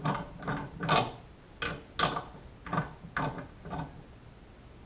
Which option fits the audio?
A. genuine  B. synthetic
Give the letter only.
A